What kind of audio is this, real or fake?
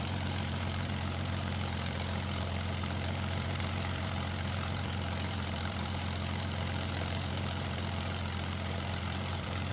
fake